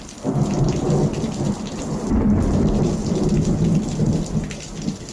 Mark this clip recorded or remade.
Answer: recorded